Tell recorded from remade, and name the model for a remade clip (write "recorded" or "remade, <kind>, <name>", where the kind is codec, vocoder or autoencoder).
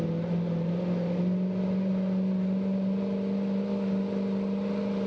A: recorded